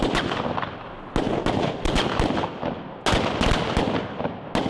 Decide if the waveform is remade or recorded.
recorded